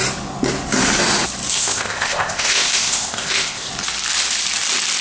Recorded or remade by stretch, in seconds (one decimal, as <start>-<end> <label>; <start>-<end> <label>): 0.0-1.5 recorded; 1.5-3.7 remade; 3.7-5.0 recorded